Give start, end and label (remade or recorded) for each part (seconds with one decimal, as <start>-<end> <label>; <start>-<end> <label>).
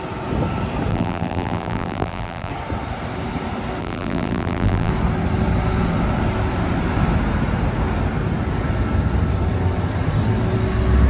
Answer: 0.0-0.9 recorded; 0.9-2.5 remade; 2.5-3.8 recorded; 3.8-4.9 remade; 4.9-11.1 recorded